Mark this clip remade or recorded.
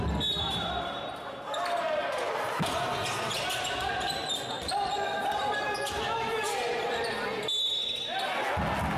recorded